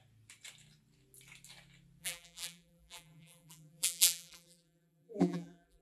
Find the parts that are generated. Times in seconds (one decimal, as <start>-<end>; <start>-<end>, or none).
2.0-5.8